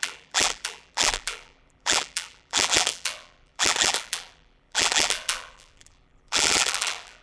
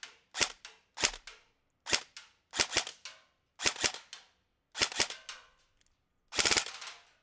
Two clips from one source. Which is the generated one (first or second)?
first